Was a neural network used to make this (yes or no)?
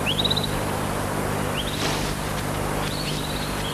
no